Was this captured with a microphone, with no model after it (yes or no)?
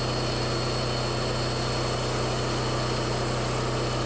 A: yes